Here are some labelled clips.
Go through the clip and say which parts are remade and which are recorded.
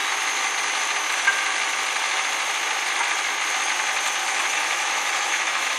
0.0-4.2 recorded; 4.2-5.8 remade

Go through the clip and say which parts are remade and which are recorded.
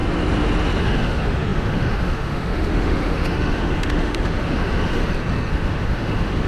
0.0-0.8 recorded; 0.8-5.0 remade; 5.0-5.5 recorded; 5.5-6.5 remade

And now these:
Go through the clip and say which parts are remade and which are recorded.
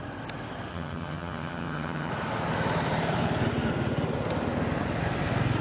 0.0-0.7 recorded; 0.7-2.1 remade; 2.1-5.6 recorded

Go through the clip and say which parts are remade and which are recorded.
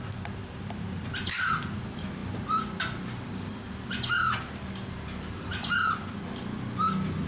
0.0-7.3 recorded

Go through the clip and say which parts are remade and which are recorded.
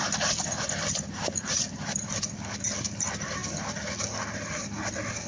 0.0-5.3 remade